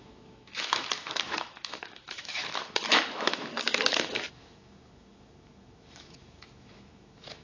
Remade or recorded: remade